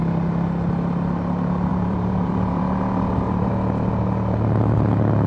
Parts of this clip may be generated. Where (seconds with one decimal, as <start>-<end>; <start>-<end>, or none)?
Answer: 1.7-3.5